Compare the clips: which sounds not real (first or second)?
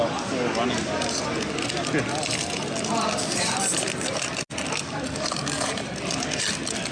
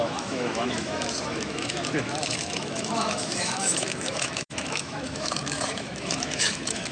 second